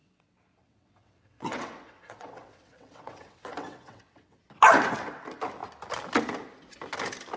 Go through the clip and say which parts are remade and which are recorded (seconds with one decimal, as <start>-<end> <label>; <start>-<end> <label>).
0.0-4.4 remade; 4.4-7.4 recorded